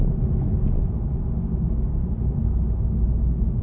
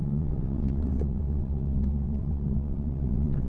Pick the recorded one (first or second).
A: first